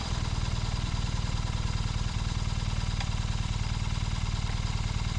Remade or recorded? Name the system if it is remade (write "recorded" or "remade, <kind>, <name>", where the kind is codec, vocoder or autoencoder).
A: recorded